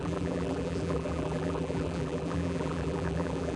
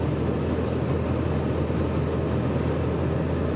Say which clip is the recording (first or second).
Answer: second